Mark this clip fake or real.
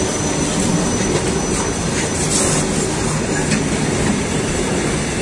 real